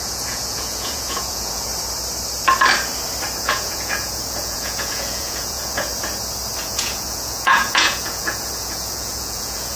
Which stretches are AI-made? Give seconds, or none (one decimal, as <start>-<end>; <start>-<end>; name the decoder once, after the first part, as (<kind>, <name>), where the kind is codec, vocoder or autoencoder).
0.0-1.7 (vocoder, Vocos); 3.4-5.9; 6.6-9.8